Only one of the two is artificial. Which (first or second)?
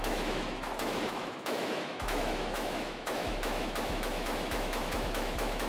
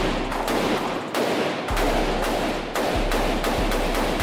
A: first